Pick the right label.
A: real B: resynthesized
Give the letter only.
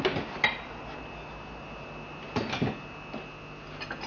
A